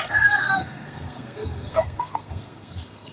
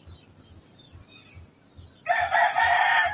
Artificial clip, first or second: first